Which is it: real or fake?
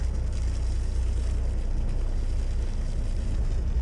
real